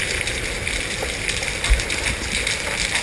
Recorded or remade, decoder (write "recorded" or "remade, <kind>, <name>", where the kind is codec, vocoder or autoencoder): recorded